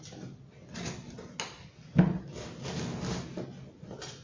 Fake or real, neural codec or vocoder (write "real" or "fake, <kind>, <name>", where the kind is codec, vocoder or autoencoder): real